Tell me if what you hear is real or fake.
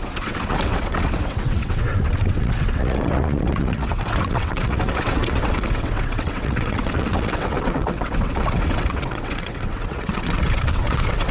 fake